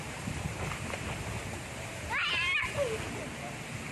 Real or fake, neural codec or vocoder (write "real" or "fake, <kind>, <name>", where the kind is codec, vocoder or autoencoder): real